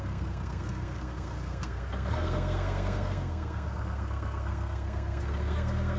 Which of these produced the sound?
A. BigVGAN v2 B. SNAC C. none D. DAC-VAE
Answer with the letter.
B